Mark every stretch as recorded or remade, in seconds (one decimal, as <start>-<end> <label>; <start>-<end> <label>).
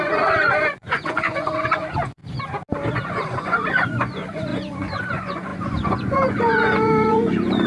0.0-2.2 remade; 2.2-2.9 recorded; 2.9-7.7 remade